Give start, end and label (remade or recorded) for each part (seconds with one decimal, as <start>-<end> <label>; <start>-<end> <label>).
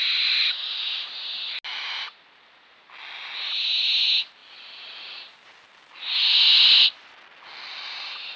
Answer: 0.0-8.4 recorded